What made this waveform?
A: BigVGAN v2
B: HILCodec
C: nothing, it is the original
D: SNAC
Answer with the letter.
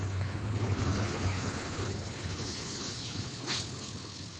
B